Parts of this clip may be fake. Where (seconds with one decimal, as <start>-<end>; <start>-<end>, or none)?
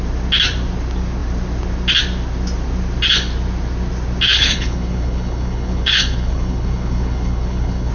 4.3-7.9